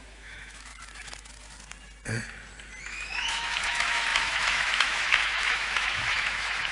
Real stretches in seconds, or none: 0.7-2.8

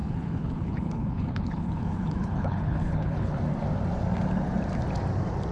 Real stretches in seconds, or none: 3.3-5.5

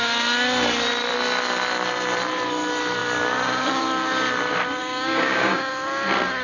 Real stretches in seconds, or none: 0.0-4.8; 5.7-6.4